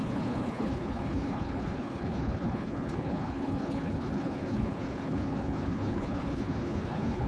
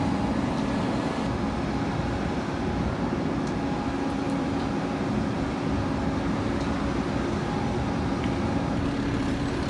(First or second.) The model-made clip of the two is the first